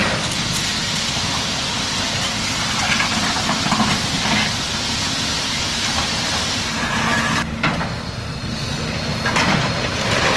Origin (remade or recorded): recorded